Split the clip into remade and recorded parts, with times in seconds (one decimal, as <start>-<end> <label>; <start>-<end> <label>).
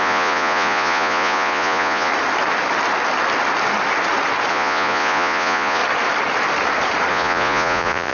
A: 0.0-2.1 remade; 2.1-4.5 recorded; 4.5-5.8 remade; 5.8-7.1 recorded; 7.1-8.1 remade